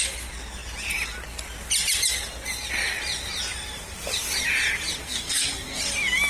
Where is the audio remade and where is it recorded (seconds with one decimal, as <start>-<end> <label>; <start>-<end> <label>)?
0.0-5.0 recorded; 5.0-5.8 remade; 5.8-6.3 recorded